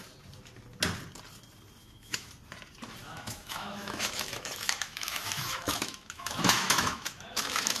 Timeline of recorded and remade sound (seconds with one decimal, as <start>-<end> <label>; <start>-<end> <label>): 0.0-1.8 recorded; 1.8-2.3 remade; 2.3-3.0 recorded; 3.0-7.8 remade